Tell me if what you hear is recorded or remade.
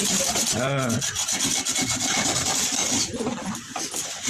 recorded